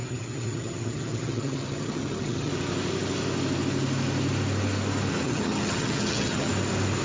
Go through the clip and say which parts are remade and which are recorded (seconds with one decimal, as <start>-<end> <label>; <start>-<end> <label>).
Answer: 0.0-2.5 remade; 2.5-5.1 recorded; 5.1-6.5 remade; 6.5-7.0 recorded